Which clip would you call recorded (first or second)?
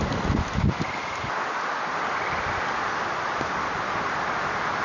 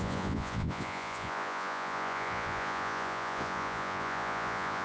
first